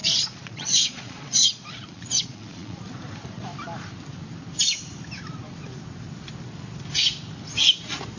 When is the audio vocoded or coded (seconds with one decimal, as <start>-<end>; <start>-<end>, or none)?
0.0-2.8